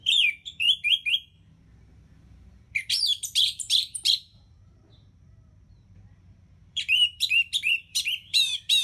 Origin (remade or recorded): remade